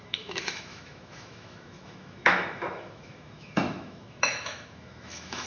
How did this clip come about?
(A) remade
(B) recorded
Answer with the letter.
A